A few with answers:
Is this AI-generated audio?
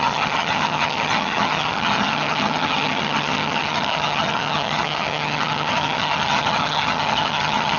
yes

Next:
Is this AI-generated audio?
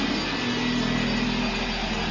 no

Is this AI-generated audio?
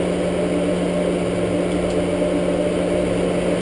no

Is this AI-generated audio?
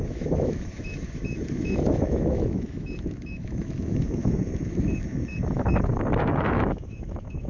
yes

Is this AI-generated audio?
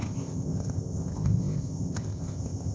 yes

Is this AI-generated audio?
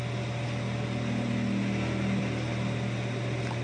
no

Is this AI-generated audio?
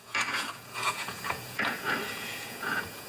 yes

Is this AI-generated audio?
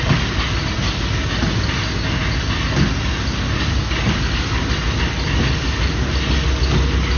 no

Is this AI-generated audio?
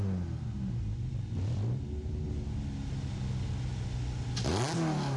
no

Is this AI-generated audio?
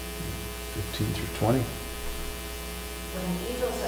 no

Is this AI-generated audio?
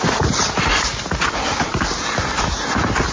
no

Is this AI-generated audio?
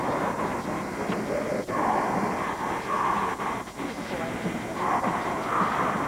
no